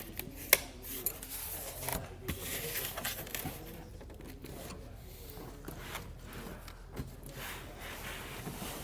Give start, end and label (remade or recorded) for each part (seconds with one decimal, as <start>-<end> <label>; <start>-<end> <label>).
0.0-8.8 recorded